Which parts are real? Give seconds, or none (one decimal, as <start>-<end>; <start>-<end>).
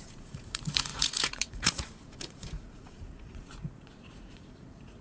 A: none